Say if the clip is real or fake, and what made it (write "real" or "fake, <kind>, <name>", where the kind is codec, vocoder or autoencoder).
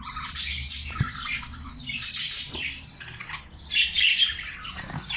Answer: real